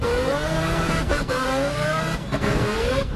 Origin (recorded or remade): remade